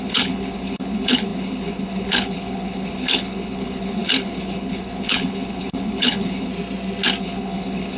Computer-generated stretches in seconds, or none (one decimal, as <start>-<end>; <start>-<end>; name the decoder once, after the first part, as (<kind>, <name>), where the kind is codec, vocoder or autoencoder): 0.0-6.5 (codec, HILCodec); 7.2-8.0